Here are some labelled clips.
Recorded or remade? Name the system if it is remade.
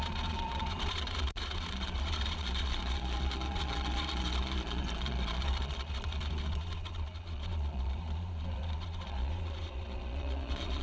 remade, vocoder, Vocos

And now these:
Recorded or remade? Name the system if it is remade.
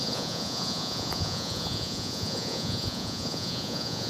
remade, vocoder, Vocos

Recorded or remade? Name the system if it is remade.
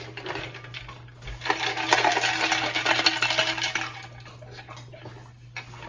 recorded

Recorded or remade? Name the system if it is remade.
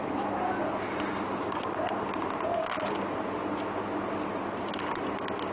recorded